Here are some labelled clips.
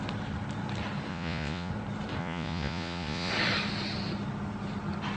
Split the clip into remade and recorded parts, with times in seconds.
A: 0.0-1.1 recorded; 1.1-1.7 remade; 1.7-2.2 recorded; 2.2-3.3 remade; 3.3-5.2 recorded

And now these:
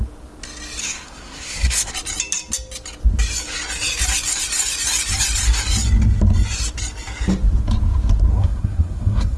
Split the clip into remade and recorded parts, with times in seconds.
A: 0.0-0.8 recorded; 0.8-1.9 remade; 1.9-8.3 recorded; 8.3-9.4 remade

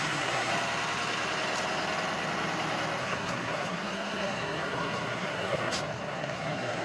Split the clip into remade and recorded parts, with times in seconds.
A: 0.0-0.5 remade; 0.5-3.0 recorded; 3.0-6.8 remade

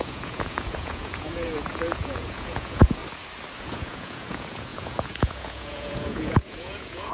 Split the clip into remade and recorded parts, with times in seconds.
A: 0.0-3.0 remade; 3.0-3.6 recorded; 3.6-7.1 remade

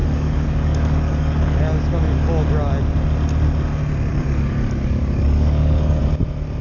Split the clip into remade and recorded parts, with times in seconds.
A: 0.0-1.6 remade; 1.6-4.1 recorded; 4.1-6.0 remade; 6.0-6.6 recorded